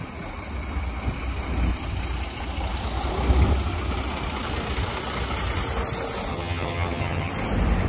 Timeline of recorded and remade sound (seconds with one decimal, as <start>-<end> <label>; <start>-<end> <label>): 0.0-6.3 recorded; 6.3-7.3 remade; 7.3-7.9 recorded